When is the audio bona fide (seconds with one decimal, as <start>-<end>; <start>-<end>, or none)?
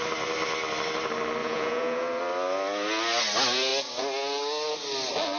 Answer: 0.0-1.4; 2.2-5.4